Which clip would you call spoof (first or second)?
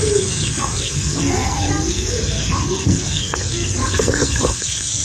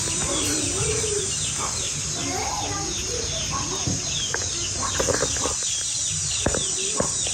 first